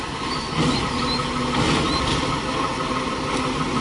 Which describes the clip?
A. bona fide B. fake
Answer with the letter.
A